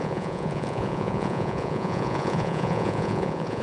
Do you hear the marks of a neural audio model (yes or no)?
yes